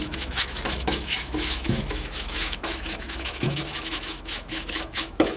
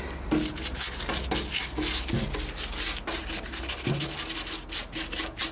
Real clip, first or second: second